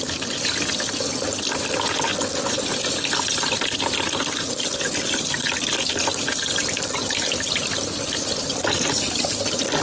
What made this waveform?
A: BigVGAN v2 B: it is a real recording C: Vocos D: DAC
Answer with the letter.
B